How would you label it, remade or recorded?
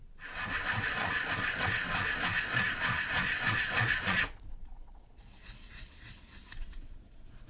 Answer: remade